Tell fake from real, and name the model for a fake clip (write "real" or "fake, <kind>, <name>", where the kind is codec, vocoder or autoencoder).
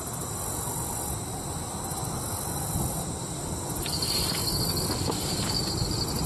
real